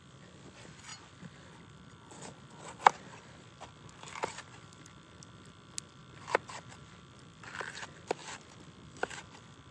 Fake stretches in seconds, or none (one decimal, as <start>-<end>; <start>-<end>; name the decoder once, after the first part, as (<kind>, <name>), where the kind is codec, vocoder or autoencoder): none